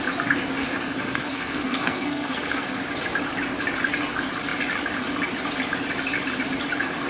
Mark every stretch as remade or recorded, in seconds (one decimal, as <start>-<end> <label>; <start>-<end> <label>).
0.0-0.6 recorded; 0.6-2.8 remade; 2.8-7.1 recorded